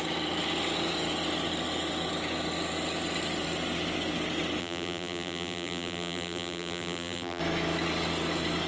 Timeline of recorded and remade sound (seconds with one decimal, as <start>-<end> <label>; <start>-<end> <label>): 0.0-4.6 recorded; 4.6-7.4 remade; 7.4-8.7 recorded